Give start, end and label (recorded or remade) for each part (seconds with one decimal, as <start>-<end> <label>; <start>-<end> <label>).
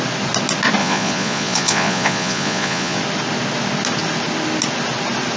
0.0-0.8 recorded; 0.8-3.0 remade; 3.0-5.4 recorded